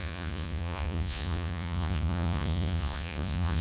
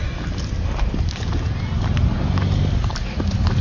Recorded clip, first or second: second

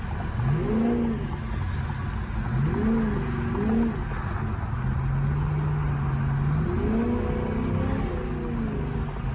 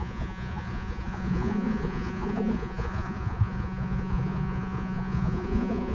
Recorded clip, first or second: first